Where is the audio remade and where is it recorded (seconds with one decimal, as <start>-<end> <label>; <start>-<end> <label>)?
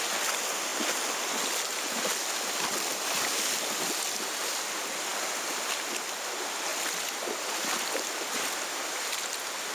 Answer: 0.0-9.7 recorded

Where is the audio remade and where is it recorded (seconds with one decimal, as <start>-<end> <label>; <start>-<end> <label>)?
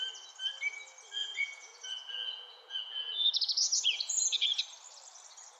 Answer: 0.0-1.2 recorded; 1.2-4.6 remade; 4.6-5.6 recorded